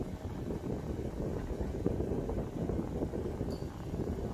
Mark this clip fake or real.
real